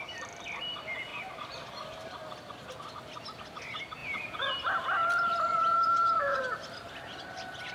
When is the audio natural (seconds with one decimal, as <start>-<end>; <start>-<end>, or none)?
0.0-4.0; 4.5-5.5; 6.4-7.7